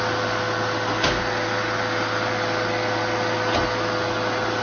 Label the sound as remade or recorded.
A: recorded